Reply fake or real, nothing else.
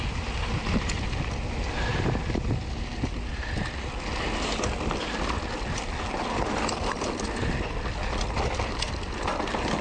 real